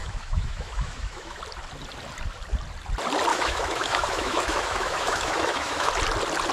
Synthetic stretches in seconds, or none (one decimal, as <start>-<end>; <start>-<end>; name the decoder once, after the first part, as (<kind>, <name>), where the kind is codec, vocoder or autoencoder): 0.0-1.4 (autoencoder, DAC-VAE); 3.3-5.9

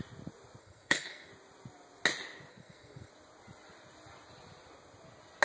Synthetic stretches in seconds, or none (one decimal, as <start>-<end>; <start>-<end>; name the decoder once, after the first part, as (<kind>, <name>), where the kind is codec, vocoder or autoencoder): 0.6-1.3 (codec, SNAC); 2.5-3.1